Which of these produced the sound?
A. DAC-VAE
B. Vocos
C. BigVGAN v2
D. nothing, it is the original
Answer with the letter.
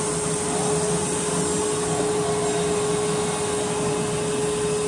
D